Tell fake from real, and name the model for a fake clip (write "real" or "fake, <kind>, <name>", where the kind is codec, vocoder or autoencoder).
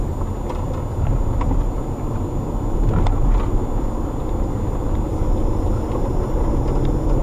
real